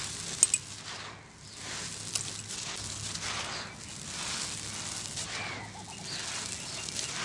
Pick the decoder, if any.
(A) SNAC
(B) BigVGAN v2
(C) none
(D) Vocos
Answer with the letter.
C